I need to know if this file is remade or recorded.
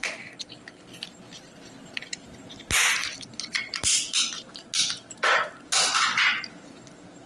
recorded